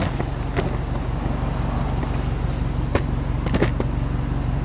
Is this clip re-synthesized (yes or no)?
no